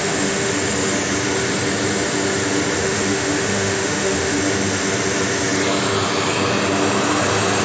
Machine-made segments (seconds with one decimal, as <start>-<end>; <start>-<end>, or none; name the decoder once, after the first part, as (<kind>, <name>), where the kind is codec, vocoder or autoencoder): 0.0-0.5 (autoencoder, DAC-VAE); 2.8-4.4